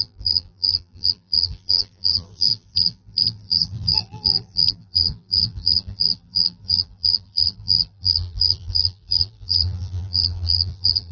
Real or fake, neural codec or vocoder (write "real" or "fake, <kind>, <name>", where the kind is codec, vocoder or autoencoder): fake, vocoder, BigVGAN v2